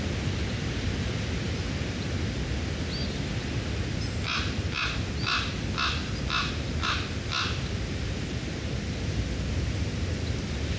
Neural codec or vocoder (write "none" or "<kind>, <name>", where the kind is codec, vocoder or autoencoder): none